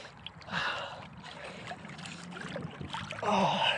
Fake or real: real